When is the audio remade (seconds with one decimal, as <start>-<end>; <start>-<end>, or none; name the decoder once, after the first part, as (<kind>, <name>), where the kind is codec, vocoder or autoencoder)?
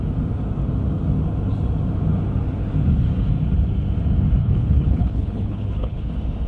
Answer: 4.4-6.1 (codec, HILCodec)